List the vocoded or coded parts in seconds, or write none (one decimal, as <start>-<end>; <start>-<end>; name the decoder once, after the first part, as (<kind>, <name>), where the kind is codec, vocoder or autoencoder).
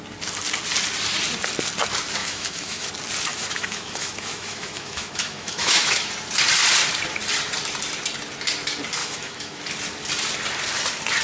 2.2-2.9 (autoencoder, DAC-VAE); 3.3-6.1; 9.0-9.6